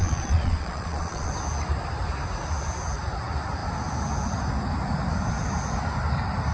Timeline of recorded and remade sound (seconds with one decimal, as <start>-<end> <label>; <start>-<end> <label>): 0.0-1.3 remade; 1.3-6.5 recorded